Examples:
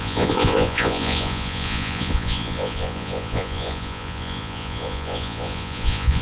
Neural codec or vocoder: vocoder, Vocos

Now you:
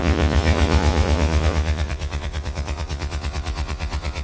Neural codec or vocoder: vocoder, Vocos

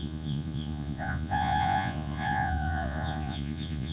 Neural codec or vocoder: vocoder, Vocos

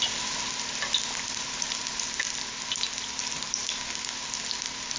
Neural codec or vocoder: none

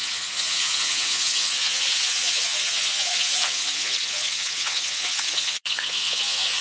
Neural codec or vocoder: vocoder, Vocos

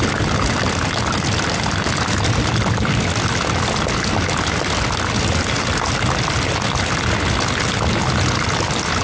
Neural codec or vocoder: none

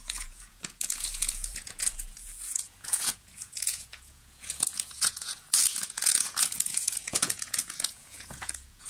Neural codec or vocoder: vocoder, Vocos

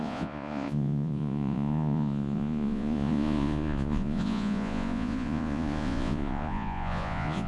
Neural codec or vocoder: vocoder, Vocos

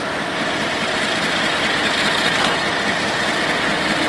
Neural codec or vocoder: none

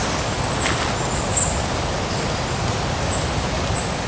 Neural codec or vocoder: none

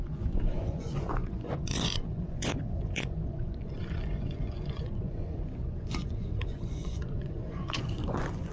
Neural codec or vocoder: vocoder, Vocos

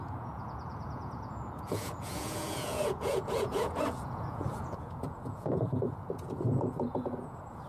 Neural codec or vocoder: vocoder, Vocos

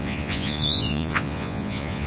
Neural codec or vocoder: vocoder, Vocos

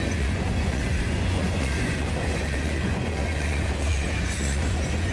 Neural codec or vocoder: vocoder, Vocos